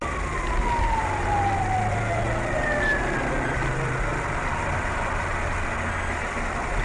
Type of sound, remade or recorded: recorded